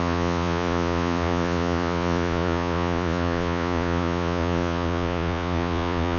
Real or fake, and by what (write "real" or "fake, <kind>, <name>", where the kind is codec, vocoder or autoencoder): fake, vocoder, Vocos